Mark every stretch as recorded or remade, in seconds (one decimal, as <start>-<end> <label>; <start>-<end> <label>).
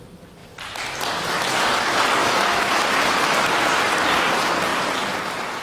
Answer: 0.0-2.2 recorded; 2.2-2.7 remade; 2.7-5.6 recorded